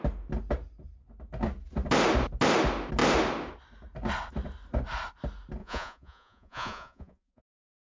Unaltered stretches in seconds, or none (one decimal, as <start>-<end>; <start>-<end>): 0.0-5.6; 7.4-8.0